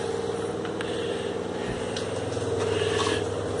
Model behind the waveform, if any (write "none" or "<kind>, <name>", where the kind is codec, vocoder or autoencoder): none